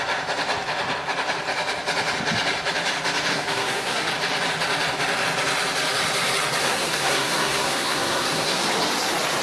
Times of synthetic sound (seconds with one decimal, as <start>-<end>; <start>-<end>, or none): 3.3-4.1; 6.6-8.6